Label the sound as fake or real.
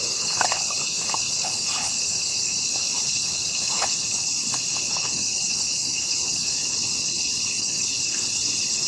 fake